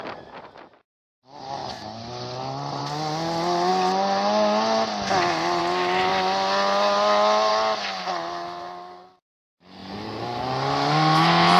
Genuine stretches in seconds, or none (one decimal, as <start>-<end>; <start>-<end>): 0.0-11.6